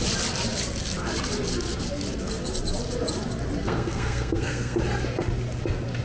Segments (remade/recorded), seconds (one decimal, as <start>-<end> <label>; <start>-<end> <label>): 0.0-3.6 recorded; 3.6-4.8 remade; 4.8-6.0 recorded